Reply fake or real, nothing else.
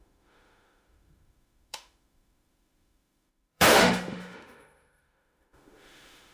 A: fake